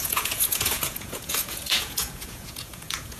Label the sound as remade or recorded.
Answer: remade